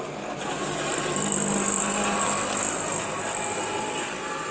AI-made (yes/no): no